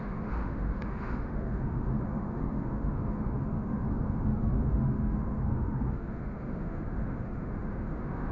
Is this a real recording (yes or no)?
no